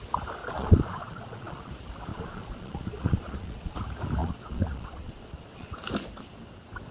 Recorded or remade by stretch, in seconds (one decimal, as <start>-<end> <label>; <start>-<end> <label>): 0.0-0.4 recorded; 0.4-1.7 remade; 1.7-2.1 recorded; 2.1-3.8 remade; 3.8-4.2 recorded; 4.2-5.8 remade; 5.8-6.9 recorded